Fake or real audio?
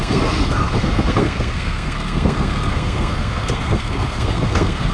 fake